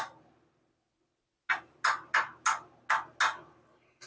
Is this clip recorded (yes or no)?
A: yes